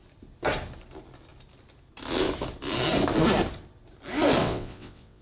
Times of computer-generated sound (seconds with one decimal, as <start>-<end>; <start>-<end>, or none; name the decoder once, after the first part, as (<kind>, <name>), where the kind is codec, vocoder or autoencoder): 4.4-5.2 (vocoder, WaveNeXt)